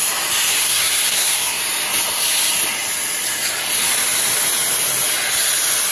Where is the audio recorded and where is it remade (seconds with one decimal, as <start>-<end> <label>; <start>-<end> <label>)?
0.0-0.5 recorded; 0.5-1.6 remade; 1.6-5.9 recorded

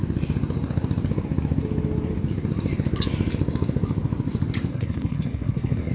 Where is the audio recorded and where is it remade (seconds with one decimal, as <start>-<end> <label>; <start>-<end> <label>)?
0.0-4.7 recorded; 4.7-5.9 remade

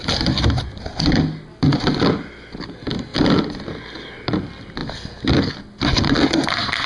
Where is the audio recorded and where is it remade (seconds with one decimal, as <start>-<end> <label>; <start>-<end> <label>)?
0.0-6.9 recorded